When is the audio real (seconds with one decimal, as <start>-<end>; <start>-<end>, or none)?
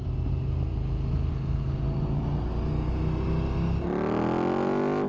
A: 0.0-5.1